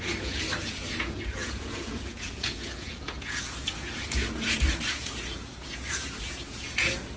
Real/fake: fake